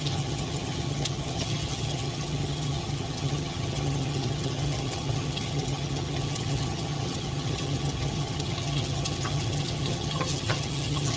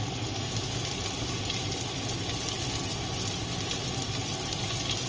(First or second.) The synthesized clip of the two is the first